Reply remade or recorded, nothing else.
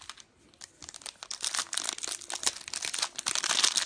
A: recorded